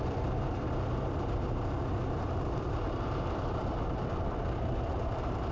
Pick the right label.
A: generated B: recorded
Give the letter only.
A